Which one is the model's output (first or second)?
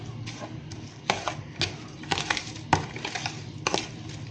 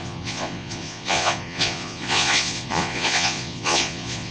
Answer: second